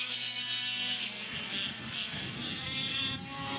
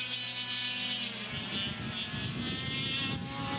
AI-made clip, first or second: first